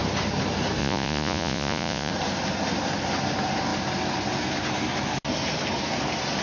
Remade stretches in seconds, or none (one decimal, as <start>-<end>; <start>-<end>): 0.8-2.1

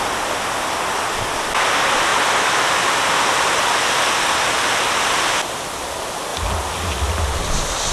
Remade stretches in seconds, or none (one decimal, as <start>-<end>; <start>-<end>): none

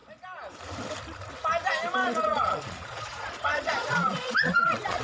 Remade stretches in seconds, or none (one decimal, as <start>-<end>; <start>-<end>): 2.0-5.0

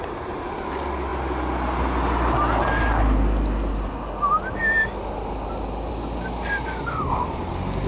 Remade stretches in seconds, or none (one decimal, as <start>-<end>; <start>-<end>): none

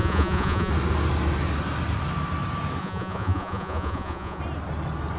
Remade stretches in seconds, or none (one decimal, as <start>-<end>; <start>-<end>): 0.0-0.7; 2.8-4.4